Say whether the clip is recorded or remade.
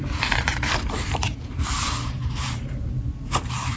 remade